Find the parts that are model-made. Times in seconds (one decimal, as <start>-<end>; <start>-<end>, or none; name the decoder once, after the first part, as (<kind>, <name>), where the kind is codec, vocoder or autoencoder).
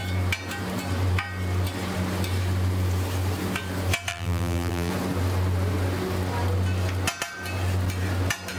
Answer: 4.1-4.9 (vocoder, BigVGAN v2)